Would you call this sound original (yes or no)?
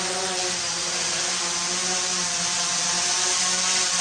yes